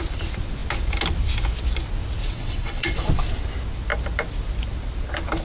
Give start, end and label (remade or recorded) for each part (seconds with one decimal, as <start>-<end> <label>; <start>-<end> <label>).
0.0-2.2 recorded; 2.2-3.1 remade; 3.1-5.4 recorded